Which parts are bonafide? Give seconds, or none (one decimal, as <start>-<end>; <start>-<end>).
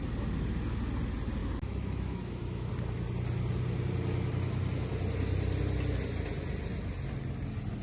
0.0-1.4; 2.7-7.8